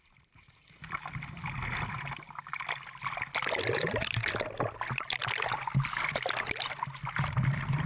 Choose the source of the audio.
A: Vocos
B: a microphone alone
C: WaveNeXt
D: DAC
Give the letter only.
B